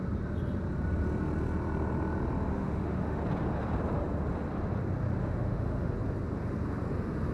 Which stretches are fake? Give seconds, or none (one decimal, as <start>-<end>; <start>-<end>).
2.5-3.2; 5.2-5.9